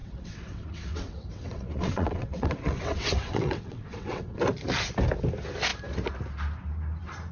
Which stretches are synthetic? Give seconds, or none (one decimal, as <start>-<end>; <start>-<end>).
0.0-4.4